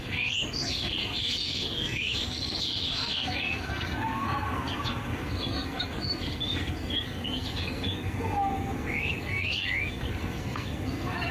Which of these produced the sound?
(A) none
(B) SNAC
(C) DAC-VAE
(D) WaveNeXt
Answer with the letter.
B